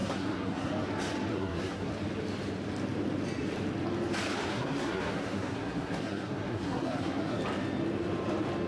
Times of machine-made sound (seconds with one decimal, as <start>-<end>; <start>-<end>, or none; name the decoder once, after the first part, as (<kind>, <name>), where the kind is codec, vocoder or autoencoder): 0.0-0.7 (codec, SNAC); 1.3-1.9; 4.5-7.4